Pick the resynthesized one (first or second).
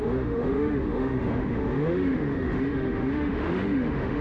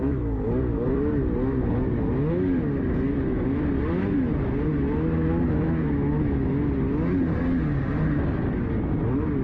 first